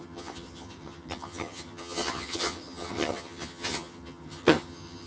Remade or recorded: remade